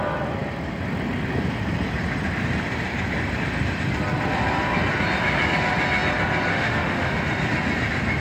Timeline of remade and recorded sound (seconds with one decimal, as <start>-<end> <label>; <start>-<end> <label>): 0.0-6.5 recorded; 6.5-7.2 remade; 7.2-8.2 recorded